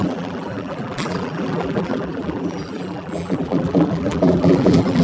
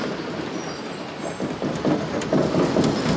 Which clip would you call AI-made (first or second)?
first